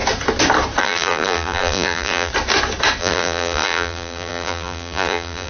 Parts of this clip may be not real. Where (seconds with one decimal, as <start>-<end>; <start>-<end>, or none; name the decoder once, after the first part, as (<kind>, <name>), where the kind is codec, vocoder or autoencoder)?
0.8-2.3 (vocoder, BigVGAN v2); 3.0-5.5